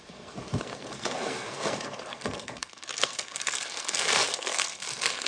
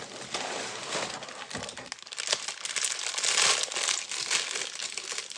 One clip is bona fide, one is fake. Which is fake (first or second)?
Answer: first